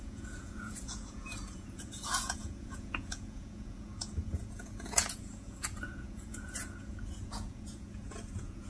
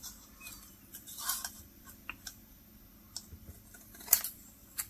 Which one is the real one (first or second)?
second